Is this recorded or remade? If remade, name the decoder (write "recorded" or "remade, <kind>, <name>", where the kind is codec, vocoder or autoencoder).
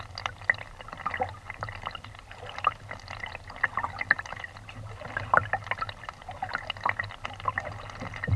recorded